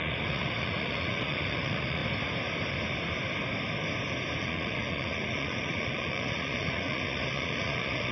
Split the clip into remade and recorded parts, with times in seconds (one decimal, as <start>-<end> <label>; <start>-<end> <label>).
0.0-2.0 remade; 2.0-4.4 recorded; 4.4-8.1 remade